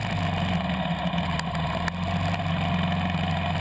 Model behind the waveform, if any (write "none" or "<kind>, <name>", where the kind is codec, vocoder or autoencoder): none